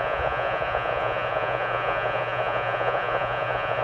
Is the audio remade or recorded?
remade